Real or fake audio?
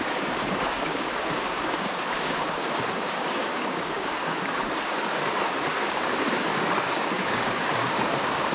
fake